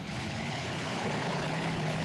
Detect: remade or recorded remade